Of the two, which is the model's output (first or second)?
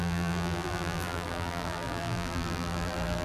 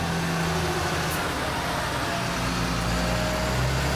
first